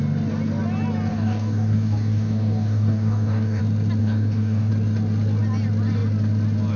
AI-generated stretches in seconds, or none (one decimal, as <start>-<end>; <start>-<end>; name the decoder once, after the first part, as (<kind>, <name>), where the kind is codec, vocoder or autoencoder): 1.1-3.6 (codec, DAC); 4.0-4.7